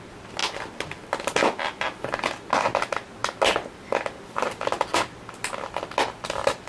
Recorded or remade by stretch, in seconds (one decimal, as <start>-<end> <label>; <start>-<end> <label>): 0.0-6.7 recorded